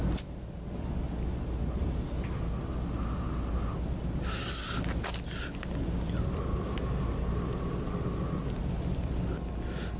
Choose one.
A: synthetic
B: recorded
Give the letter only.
B